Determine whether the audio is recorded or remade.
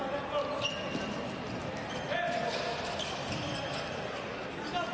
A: recorded